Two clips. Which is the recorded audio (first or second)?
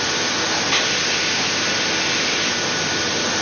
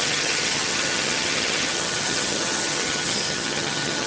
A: first